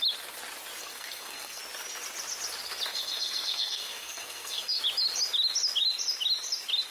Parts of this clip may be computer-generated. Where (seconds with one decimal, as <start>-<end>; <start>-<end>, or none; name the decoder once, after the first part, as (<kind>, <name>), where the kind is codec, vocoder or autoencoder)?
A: 0.8-1.6 (codec, SNAC); 2.9-4.8